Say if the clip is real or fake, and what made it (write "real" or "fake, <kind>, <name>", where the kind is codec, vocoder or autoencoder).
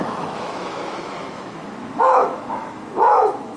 fake, autoencoder, DAC-VAE